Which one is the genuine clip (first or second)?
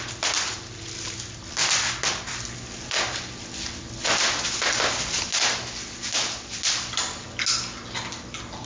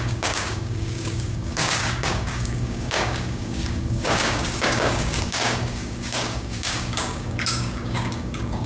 first